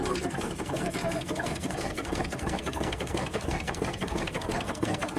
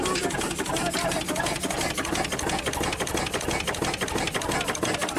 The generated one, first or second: first